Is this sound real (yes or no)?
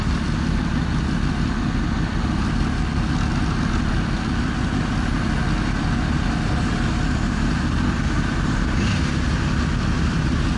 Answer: yes